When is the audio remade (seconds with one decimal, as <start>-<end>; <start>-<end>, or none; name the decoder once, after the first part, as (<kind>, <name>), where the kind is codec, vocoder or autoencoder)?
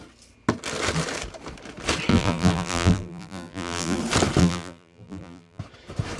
2.1-4.0 (vocoder, BigVGAN v2); 4.4-5.6